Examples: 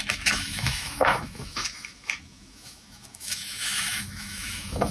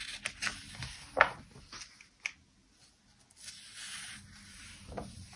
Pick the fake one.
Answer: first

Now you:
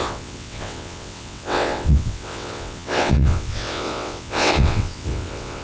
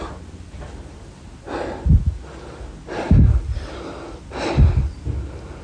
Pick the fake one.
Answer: first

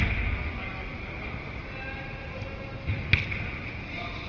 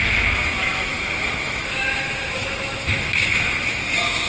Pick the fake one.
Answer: second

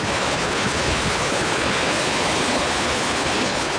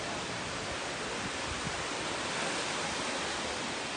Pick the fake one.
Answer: first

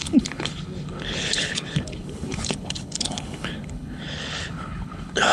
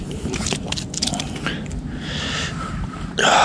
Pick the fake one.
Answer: first